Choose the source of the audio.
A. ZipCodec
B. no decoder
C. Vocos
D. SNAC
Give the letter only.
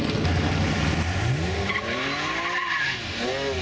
B